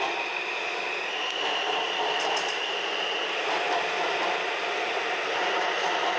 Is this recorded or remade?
recorded